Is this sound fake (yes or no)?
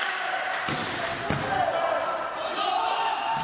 no